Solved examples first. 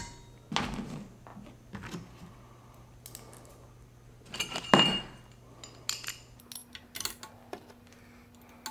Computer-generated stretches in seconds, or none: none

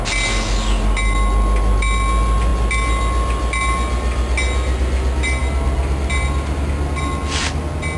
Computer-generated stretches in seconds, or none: none

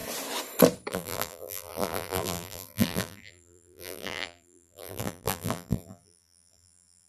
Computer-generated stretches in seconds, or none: 0.9-7.1 (vocoder, BigVGAN v2)

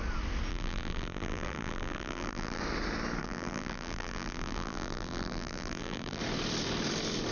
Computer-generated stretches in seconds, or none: 0.5-2.6 (vocoder, BigVGAN v2); 3.2-6.2

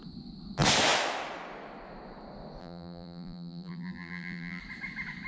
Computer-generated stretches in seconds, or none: 2.6-4.6 (vocoder, BigVGAN v2)